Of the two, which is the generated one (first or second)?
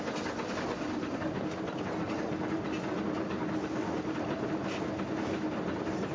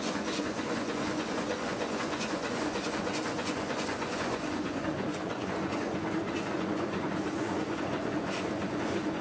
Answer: second